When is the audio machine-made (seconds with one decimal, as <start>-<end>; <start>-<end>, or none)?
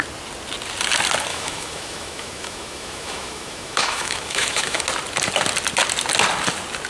1.3-4.8